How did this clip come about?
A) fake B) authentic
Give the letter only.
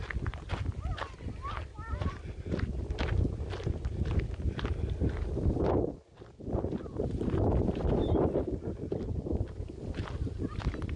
B